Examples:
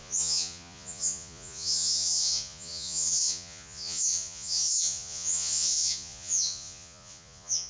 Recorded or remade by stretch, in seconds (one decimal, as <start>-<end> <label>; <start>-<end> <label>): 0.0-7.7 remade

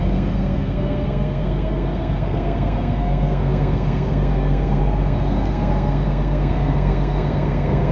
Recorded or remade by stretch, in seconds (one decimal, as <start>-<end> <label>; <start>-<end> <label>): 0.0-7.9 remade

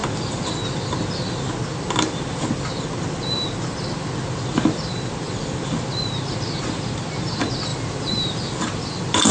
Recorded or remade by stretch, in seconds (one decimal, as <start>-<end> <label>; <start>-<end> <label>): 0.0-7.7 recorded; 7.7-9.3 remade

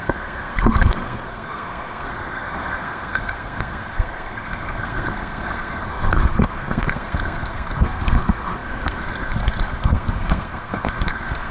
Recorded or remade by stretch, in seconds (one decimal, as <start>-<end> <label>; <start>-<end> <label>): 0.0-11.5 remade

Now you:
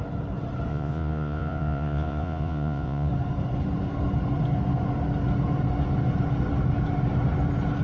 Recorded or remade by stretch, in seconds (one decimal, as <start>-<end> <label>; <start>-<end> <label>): 0.0-0.7 recorded; 0.7-3.1 remade; 3.1-7.8 recorded